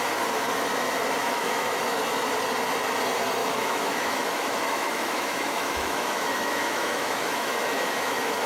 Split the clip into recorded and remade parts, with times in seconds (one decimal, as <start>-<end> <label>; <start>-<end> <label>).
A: 0.0-1.2 recorded; 1.2-2.0 remade; 2.0-3.4 recorded; 3.4-8.5 remade